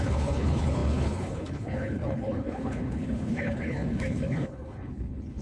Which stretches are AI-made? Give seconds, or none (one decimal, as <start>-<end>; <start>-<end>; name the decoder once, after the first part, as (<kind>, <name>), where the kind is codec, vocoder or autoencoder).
0.0-5.4 (codec, HILCodec)